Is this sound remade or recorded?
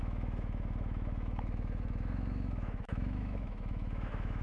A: remade